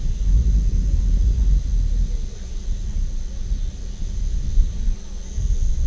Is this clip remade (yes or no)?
no